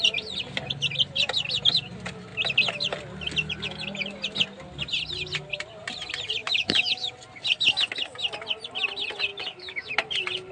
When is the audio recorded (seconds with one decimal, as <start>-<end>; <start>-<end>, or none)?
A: 0.0-6.4; 7.1-9.3; 9.9-10.5